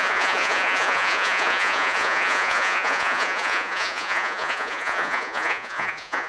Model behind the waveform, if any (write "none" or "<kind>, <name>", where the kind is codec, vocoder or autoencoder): vocoder, Vocos